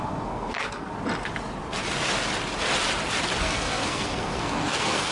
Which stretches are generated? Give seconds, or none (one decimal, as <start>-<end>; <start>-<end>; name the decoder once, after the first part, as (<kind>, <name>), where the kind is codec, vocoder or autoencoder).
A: 0.0-0.9 (codec, SNAC); 3.4-5.1